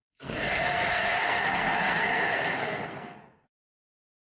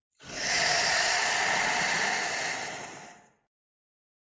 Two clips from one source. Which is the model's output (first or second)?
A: first